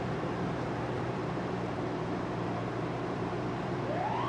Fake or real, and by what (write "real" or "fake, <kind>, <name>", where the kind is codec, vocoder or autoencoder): fake, vocoder, BigVGAN v2